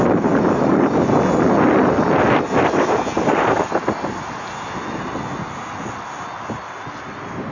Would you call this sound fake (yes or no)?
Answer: no